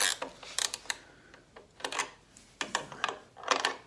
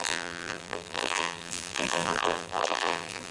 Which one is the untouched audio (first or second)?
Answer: first